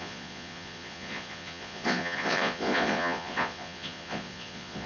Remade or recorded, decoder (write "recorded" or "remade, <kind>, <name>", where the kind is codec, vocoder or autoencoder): remade, vocoder, Vocos